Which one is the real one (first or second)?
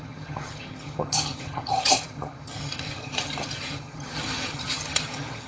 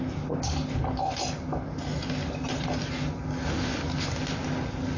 second